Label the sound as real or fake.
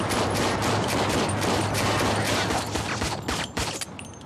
real